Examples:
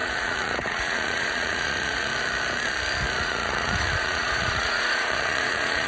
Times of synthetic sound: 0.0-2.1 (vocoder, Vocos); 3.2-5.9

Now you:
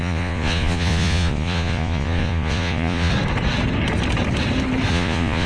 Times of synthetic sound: 0.0-3.1 (vocoder, Vocos); 4.9-5.5